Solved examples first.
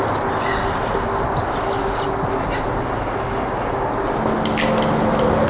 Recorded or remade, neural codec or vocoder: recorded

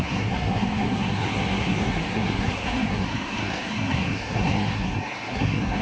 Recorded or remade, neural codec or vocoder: remade, codec, SNAC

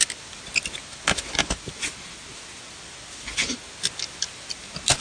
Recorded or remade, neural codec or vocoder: recorded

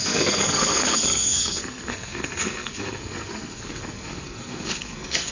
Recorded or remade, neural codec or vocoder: remade, codec, SNAC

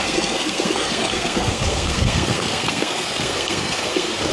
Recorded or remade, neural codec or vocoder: remade, codec, SNAC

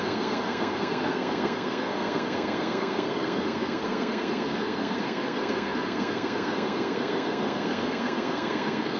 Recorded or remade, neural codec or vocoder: remade, codec, SNAC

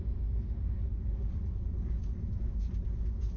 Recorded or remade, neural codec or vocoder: recorded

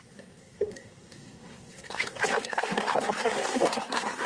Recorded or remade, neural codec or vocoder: remade, codec, SNAC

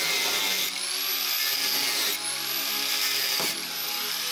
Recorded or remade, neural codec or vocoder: recorded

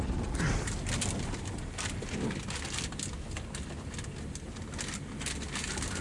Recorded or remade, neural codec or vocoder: recorded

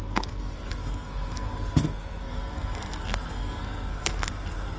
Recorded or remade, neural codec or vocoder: remade, codec, SNAC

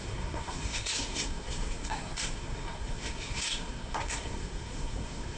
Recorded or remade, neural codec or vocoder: remade, codec, SNAC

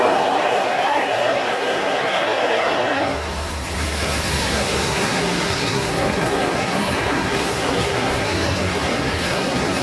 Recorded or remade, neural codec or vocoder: remade, codec, SNAC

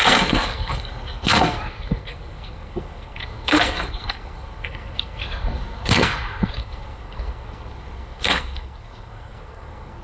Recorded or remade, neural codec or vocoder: remade, codec, SNAC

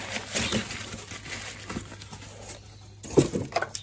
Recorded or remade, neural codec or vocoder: recorded